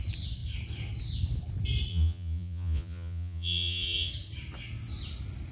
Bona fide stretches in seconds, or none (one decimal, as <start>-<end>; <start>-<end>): 0.0-1.9; 4.1-5.5